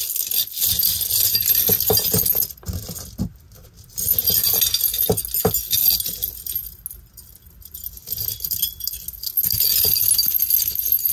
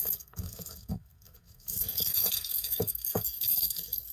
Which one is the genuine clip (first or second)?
first